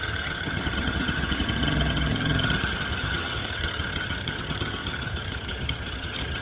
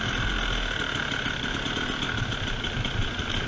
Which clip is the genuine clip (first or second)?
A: second